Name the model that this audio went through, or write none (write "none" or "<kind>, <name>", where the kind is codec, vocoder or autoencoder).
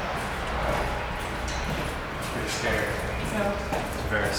none